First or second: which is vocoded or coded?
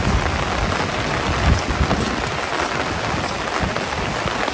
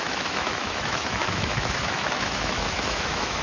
second